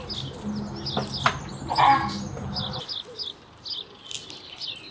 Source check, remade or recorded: recorded